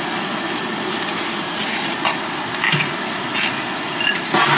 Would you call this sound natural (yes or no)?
yes